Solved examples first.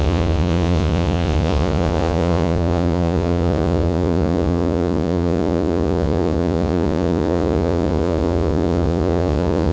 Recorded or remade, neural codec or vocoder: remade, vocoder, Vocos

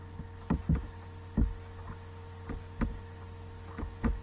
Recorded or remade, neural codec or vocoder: recorded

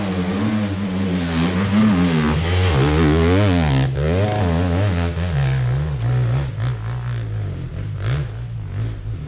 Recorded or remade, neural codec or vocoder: recorded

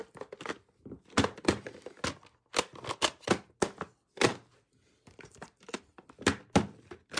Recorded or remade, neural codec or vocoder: recorded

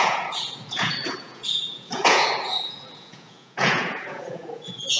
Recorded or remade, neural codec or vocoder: remade, vocoder, Vocos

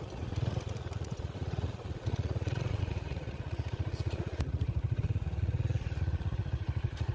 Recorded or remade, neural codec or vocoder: remade, vocoder, Vocos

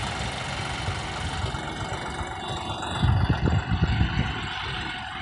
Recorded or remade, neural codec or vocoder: recorded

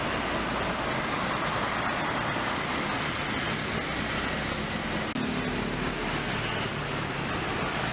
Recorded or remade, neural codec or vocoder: recorded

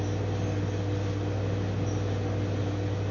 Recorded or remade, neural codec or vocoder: recorded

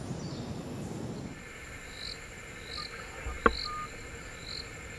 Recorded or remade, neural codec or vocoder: recorded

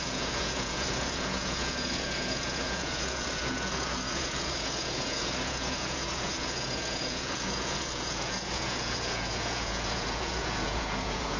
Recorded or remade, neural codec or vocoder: remade, vocoder, Vocos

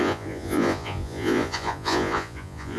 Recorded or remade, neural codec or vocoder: remade, vocoder, Vocos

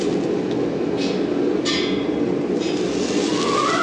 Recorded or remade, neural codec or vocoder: recorded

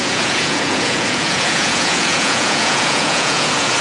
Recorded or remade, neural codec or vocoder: remade, vocoder, Vocos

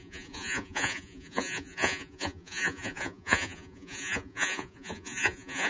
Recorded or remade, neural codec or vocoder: remade, vocoder, Vocos